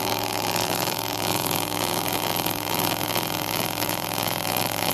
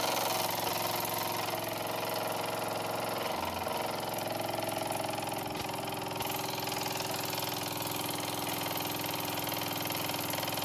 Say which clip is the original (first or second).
second